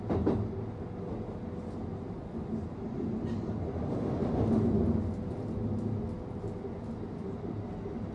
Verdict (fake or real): real